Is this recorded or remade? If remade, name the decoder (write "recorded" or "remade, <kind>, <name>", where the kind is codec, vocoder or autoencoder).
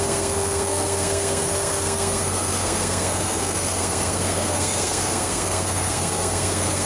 remade, codec, SNAC